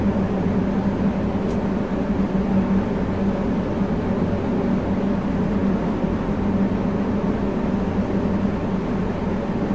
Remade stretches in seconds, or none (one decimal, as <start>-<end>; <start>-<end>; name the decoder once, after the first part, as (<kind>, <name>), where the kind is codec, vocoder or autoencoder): none